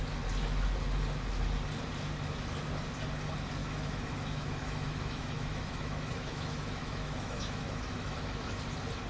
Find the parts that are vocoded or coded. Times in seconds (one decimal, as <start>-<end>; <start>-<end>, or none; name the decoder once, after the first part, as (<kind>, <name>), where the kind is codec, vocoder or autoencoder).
3.6-8.6 (autoencoder, DAC-VAE)